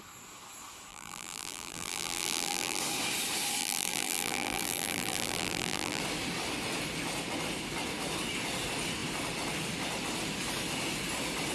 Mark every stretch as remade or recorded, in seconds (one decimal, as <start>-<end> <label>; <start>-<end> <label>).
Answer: 0.0-0.9 recorded; 0.9-2.8 remade; 2.8-3.6 recorded; 3.6-6.0 remade; 6.0-11.5 recorded